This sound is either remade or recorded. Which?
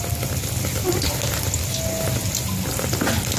recorded